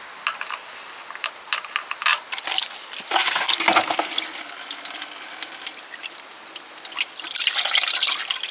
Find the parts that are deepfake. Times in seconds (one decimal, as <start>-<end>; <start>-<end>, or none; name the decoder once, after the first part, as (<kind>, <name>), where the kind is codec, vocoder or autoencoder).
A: none